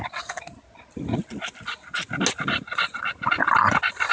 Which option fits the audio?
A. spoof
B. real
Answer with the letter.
B